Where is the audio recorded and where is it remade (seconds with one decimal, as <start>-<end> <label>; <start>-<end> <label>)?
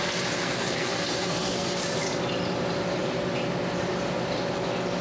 0.0-0.4 recorded; 0.4-1.8 remade; 1.8-5.0 recorded